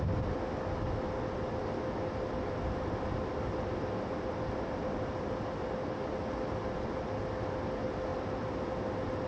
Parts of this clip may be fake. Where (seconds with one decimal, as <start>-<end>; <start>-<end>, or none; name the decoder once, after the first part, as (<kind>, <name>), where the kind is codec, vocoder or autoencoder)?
none